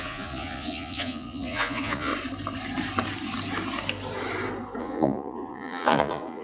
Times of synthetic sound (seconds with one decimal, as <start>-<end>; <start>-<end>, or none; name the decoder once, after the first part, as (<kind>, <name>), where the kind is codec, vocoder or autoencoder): 0.0-2.1 (vocoder, Vocos); 4.8-6.4

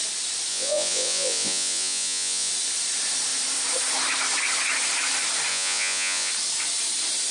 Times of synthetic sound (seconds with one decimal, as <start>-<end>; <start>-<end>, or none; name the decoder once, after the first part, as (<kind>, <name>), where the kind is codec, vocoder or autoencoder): 0.5-2.5 (vocoder, Vocos); 5.5-6.3

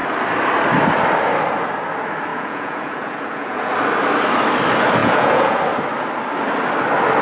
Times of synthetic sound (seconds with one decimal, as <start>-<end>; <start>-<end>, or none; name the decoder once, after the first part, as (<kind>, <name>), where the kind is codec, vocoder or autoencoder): 2.3-3.7 (vocoder, Vocos); 5.0-5.6

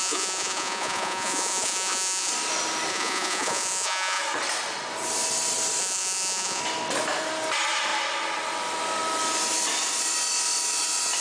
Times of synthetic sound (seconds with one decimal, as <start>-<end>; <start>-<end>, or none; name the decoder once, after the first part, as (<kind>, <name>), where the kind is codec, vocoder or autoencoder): 0.0-2.3 (vocoder, Vocos); 2.9-4.2; 5.8-6.6